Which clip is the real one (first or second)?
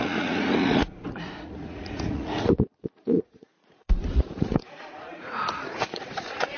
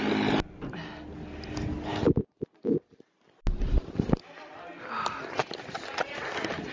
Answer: second